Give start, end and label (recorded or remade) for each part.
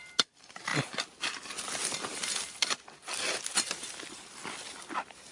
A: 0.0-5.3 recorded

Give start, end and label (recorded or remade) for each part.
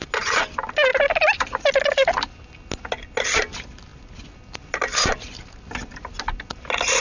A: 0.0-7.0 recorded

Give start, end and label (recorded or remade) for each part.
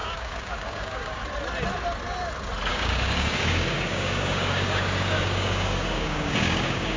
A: 0.0-1.2 remade; 1.2-2.7 recorded; 2.7-7.0 remade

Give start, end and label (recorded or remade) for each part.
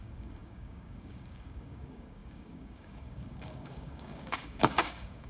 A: 0.0-5.3 remade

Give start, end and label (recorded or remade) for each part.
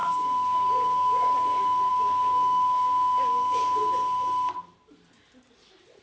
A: 0.0-3.8 remade; 3.8-6.0 recorded